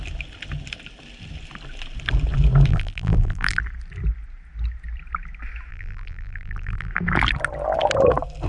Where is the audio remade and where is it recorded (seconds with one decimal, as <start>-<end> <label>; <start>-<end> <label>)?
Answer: 0.0-2.7 recorded; 2.7-3.6 remade; 3.6-5.7 recorded; 5.7-6.9 remade; 6.9-8.5 recorded